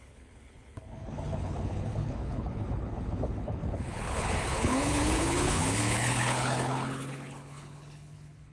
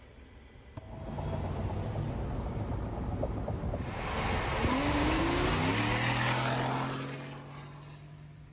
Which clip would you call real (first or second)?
second